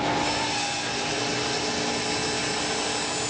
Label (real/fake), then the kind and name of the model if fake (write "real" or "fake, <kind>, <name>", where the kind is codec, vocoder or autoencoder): real